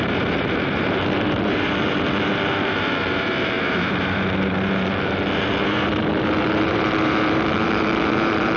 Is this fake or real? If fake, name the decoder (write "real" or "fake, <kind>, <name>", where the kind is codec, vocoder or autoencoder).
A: fake, vocoder, BigVGAN v2